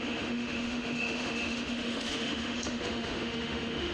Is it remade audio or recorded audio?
remade